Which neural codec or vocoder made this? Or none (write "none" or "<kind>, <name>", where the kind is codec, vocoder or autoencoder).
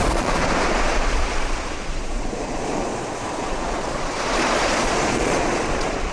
vocoder, Vocos